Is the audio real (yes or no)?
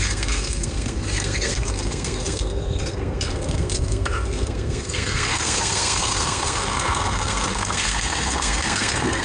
no